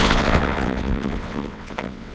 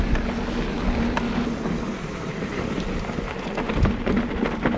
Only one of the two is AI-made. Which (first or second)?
first